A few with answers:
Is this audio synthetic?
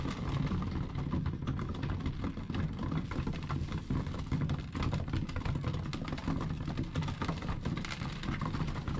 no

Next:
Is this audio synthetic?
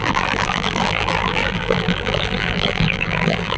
yes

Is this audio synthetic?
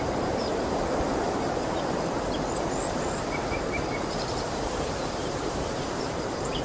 yes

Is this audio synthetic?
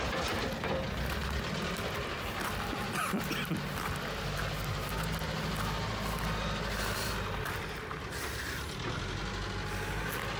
no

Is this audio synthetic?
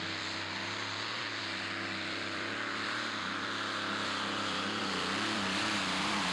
yes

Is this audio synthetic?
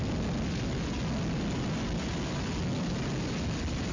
no